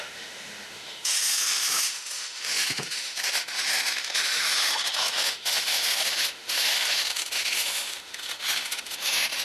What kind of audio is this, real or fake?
fake